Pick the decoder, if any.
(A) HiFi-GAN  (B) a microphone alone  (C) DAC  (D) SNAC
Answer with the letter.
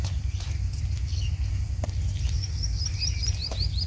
B